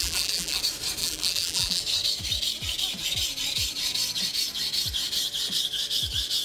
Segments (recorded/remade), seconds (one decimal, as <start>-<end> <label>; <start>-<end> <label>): 0.0-0.6 remade; 0.6-1.0 recorded; 1.0-1.8 remade; 1.8-6.4 recorded